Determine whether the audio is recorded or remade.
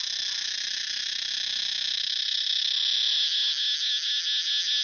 recorded